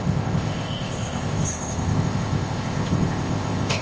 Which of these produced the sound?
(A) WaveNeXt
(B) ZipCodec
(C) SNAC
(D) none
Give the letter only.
B